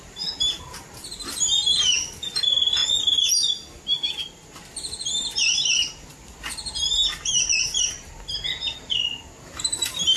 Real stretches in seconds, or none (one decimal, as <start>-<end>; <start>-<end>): 0.0-10.2